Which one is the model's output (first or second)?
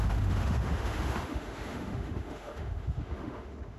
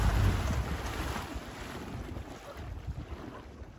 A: first